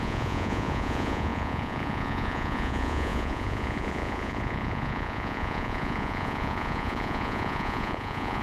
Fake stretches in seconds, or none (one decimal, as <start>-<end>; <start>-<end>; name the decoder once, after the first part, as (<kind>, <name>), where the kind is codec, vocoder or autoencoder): 0.0-8.4 (vocoder, Vocos)